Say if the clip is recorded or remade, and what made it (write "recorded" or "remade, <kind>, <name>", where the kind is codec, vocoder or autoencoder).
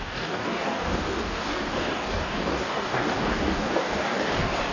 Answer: remade, codec, DAC